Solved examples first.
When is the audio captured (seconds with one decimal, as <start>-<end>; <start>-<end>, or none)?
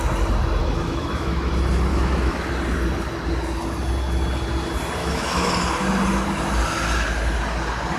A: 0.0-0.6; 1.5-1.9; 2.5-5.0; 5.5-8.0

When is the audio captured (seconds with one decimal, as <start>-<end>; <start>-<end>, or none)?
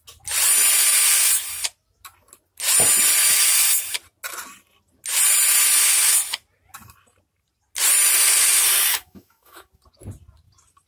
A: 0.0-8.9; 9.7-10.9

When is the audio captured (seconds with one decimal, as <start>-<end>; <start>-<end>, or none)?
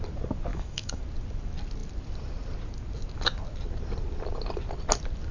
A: 0.0-0.5; 1.0-5.3